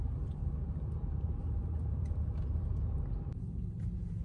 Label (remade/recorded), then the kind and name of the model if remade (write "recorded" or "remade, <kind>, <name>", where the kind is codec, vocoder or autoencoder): remade, vocoder, BigVGAN v2